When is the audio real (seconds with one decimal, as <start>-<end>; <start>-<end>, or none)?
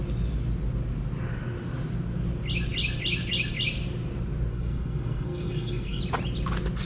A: 0.0-4.5; 6.0-6.8